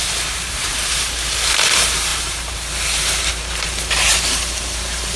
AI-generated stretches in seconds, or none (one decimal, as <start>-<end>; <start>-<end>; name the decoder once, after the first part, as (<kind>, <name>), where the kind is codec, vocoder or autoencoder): 0.0-5.2 (vocoder, BigVGAN v2)